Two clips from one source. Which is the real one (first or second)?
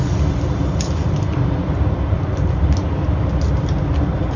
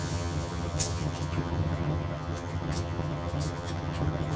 first